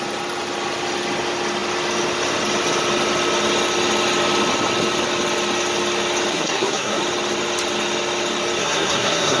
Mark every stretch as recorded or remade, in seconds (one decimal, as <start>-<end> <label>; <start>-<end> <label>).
0.0-6.3 recorded; 6.3-7.0 remade; 7.0-8.6 recorded; 8.6-9.4 remade